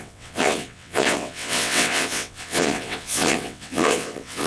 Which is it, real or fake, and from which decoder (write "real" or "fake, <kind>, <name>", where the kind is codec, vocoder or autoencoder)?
fake, vocoder, WaveNeXt